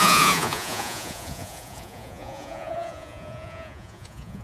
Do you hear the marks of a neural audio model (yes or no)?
yes